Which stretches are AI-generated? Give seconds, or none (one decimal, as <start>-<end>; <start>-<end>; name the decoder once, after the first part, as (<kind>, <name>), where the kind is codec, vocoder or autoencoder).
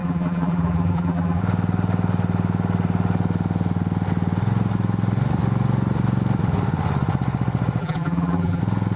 0.0-1.4 (vocoder, BigVGAN v2); 7.8-8.6